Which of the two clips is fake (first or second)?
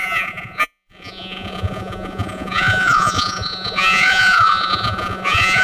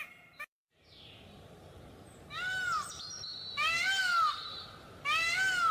first